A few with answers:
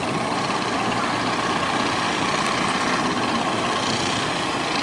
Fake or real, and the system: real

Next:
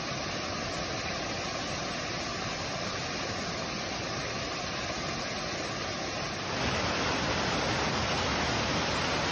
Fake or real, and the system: real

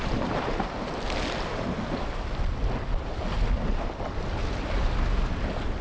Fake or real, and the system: real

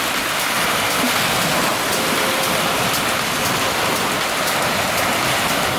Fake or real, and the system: real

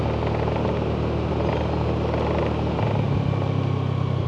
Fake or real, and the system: real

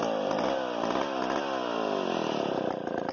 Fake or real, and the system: real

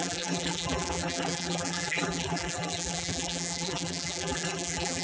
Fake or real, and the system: fake, vocoder, BigVGAN v2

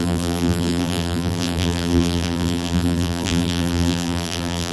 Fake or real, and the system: fake, vocoder, BigVGAN v2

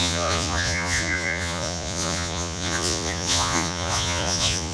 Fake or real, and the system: fake, vocoder, Vocos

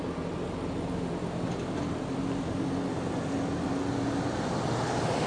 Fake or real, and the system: real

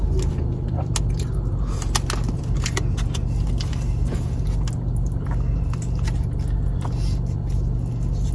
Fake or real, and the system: real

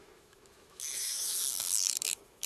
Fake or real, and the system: fake, autoencoder, DAC-VAE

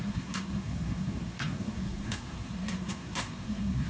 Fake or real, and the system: fake, codec, SNAC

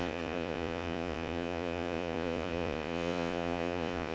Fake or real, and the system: fake, vocoder, Vocos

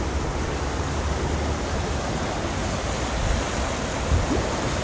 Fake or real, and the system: real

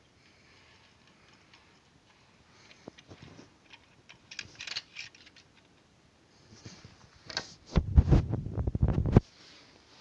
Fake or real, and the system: real